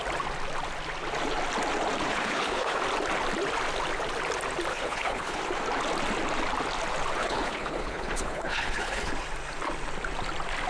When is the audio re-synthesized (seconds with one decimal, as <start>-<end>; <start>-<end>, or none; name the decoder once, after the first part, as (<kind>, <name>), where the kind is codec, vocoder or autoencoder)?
2.1-2.8 (codec, HILCodec); 4.7-5.4; 7.2-9.1